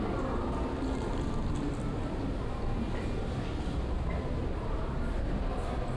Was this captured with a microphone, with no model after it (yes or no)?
yes